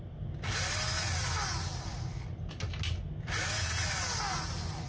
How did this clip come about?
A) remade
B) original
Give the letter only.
B